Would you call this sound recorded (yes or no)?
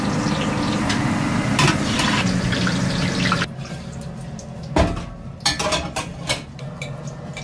yes